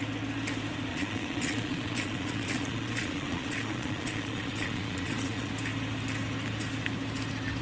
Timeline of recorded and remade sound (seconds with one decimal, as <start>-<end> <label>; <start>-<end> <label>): 0.0-0.9 recorded; 0.9-5.5 remade; 5.5-7.6 recorded